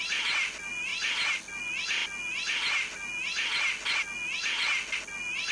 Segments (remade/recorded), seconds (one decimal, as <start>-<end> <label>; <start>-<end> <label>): 0.0-5.5 recorded